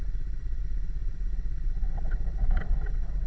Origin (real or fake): fake